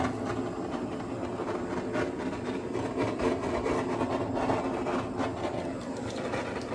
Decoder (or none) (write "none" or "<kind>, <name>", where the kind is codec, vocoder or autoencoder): none